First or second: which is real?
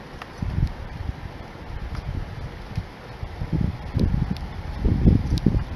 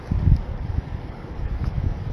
first